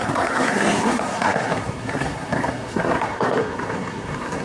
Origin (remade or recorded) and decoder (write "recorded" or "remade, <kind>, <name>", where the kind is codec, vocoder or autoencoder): remade, codec, SNAC